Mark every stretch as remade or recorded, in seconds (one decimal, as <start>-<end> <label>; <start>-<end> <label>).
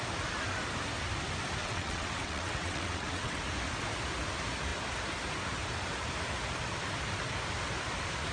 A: 0.0-1.6 recorded; 1.6-3.4 remade; 3.4-8.3 recorded